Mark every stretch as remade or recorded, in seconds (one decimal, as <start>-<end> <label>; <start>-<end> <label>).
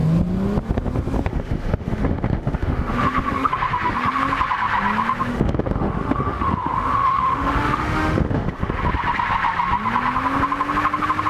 0.0-1.3 recorded; 1.3-4.2 remade; 4.2-5.3 recorded; 5.3-8.8 remade; 8.8-11.3 recorded